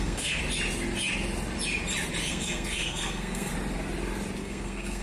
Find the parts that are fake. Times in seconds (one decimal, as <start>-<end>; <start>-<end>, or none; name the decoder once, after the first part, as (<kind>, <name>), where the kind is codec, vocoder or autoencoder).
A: 0.0-0.4 (codec, SNAC); 2.3-3.5; 4.4-5.0